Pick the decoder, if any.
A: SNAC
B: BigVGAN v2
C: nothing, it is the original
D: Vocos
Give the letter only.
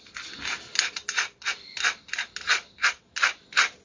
C